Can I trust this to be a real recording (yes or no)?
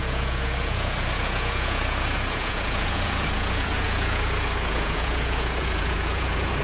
no